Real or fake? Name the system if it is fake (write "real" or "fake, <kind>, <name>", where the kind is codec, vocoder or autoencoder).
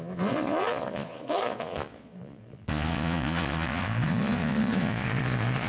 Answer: fake, vocoder, Vocos